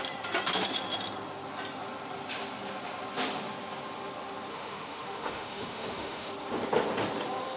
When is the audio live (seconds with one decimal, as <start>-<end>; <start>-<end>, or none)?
0.0-4.5; 6.3-7.6